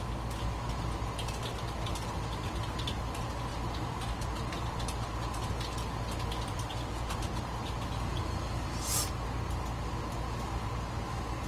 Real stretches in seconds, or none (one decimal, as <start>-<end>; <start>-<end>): 0.0-11.5